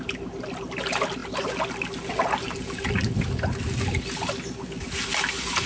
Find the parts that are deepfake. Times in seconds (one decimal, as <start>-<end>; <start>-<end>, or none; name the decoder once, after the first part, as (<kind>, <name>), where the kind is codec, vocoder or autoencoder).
none